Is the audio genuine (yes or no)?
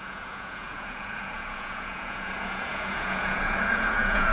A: no